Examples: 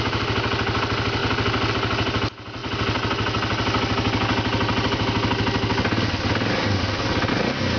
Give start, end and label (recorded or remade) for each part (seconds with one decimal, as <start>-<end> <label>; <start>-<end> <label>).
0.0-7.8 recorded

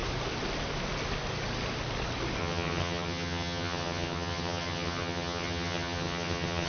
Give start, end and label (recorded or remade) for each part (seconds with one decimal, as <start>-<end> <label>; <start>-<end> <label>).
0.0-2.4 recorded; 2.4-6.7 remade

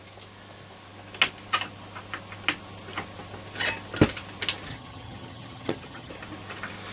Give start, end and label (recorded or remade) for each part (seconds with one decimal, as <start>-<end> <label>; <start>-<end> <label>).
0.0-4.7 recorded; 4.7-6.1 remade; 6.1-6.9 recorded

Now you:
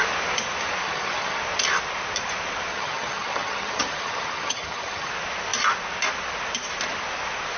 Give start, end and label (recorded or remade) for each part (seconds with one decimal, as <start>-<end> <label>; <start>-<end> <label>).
0.0-0.8 recorded; 0.8-1.4 remade; 1.4-2.7 recorded; 2.7-5.1 remade; 5.1-7.6 recorded

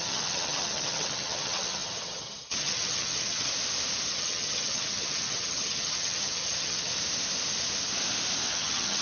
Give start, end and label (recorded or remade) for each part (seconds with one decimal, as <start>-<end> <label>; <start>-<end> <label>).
0.0-3.5 remade; 3.5-4.1 recorded; 4.1-6.9 remade; 6.9-8.5 recorded; 8.5-9.0 remade

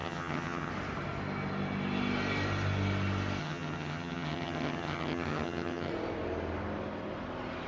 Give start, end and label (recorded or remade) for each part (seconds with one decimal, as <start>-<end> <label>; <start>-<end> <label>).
0.0-0.7 remade; 0.7-3.4 recorded; 3.4-5.9 remade; 5.9-7.7 recorded

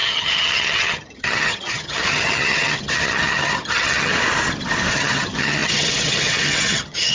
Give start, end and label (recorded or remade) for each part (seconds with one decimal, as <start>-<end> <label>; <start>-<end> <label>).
0.0-4.1 remade; 4.1-4.9 recorded; 4.9-7.1 remade

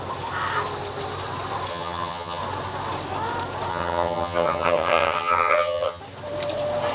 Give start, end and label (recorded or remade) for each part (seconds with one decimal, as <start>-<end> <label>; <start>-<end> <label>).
0.0-1.7 recorded; 1.7-2.4 remade; 2.4-3.7 recorded; 3.7-6.0 remade; 6.0-6.9 recorded